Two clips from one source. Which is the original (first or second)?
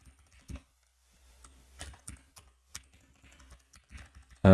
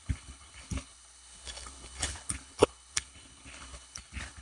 first